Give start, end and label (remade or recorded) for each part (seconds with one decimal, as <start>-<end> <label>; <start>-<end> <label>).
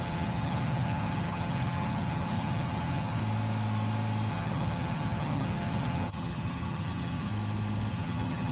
0.0-3.2 remade; 3.2-4.3 recorded; 4.3-7.3 remade; 7.3-7.9 recorded; 7.9-8.5 remade